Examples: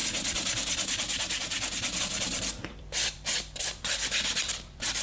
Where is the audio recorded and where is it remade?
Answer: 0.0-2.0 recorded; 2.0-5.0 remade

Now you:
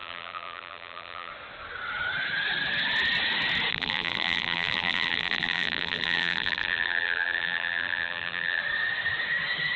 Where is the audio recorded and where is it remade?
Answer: 0.0-1.3 remade; 1.3-3.7 recorded; 3.7-8.6 remade; 8.6-9.8 recorded

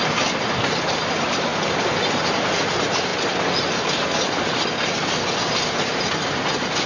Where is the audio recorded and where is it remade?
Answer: 0.0-1.5 remade; 1.5-2.1 recorded; 2.1-3.1 remade; 3.1-6.9 recorded

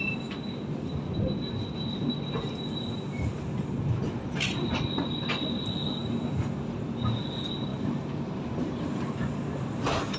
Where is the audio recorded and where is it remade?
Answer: 0.0-7.7 recorded; 7.7-8.8 remade; 8.8-10.2 recorded